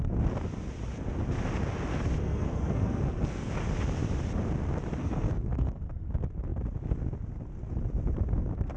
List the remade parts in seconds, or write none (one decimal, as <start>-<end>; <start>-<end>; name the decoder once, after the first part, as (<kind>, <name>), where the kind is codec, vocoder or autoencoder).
2.2-3.5 (codec, SNAC); 5.0-6.1